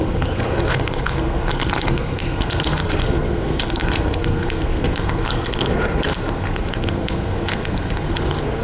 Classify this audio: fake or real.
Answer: fake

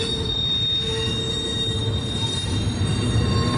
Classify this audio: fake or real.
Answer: real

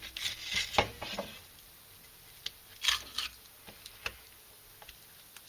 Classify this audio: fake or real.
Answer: real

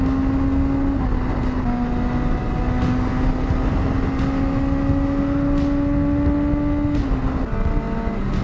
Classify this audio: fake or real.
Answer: real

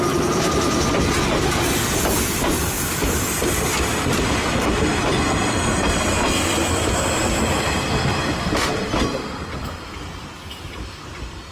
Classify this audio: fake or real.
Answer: real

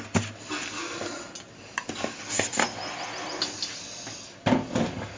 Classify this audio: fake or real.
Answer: real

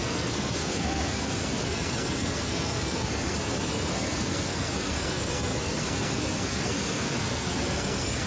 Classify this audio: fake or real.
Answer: fake